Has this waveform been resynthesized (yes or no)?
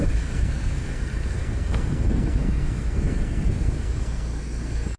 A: yes